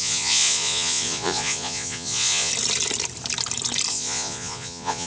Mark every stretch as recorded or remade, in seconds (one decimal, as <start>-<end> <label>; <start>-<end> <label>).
0.0-2.5 remade; 2.5-3.9 recorded; 3.9-5.1 remade